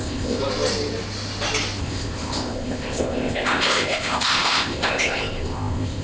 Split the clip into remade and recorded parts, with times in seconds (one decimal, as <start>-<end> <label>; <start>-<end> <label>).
0.0-0.4 remade; 0.4-1.8 recorded; 1.8-6.0 remade